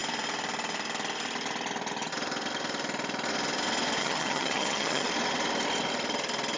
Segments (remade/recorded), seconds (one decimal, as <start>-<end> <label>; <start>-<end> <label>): 0.0-4.0 recorded; 4.0-5.1 remade; 5.1-6.6 recorded

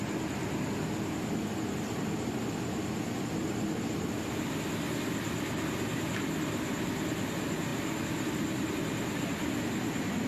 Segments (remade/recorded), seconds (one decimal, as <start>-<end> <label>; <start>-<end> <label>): 0.0-10.3 recorded